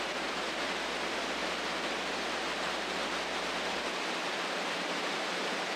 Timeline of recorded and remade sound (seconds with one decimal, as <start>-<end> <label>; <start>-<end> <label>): 0.0-1.4 remade; 1.4-4.9 recorded; 4.9-5.8 remade